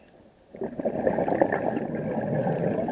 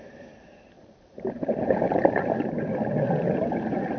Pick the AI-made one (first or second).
second